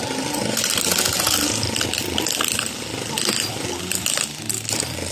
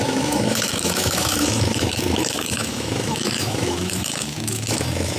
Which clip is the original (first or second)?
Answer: first